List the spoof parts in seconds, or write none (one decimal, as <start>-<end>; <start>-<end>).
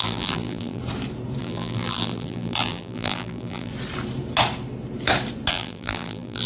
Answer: 0.0-0.8; 1.4-3.7; 5.5-6.5